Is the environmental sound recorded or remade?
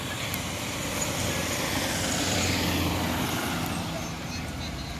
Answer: recorded